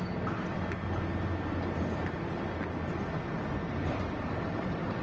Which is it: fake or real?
real